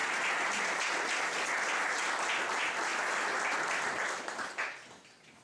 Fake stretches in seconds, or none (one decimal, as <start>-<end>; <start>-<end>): none